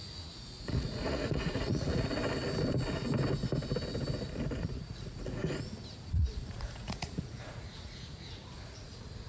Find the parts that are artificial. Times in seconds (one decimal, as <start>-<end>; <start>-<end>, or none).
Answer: 0.0-2.2; 4.6-5.4; 6.1-9.3